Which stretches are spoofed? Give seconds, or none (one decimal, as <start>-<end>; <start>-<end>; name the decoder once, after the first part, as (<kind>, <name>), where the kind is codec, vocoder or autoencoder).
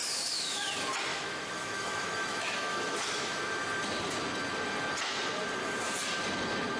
0.0-0.7 (autoencoder, DAC-VAE); 1.1-3.4